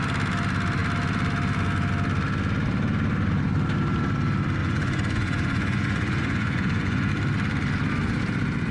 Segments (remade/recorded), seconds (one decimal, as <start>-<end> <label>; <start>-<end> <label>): 0.0-4.6 recorded; 4.6-7.1 remade; 7.1-8.7 recorded